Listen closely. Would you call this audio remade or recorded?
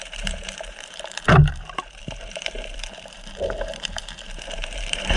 remade